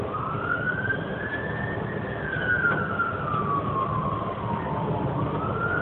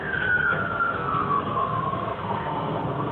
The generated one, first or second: second